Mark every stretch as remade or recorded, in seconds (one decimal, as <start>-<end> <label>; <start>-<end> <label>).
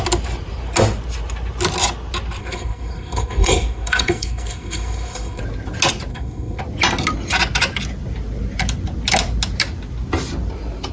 0.0-2.4 recorded; 2.4-5.4 remade; 5.4-6.1 recorded; 6.1-6.6 remade; 6.6-10.9 recorded